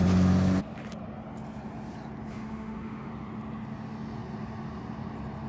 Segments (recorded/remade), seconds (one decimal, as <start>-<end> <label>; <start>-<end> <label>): 0.0-2.3 recorded; 2.3-3.1 remade; 3.1-5.5 recorded